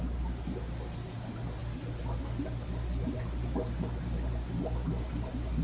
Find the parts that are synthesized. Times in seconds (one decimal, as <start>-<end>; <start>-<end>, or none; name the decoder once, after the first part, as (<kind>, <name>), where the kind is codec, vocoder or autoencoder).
none